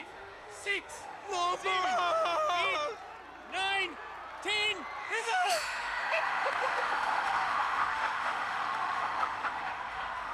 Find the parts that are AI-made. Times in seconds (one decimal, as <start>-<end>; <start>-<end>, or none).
0.0-1.3; 5.0-10.3